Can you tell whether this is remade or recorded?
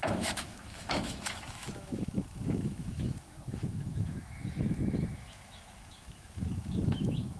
remade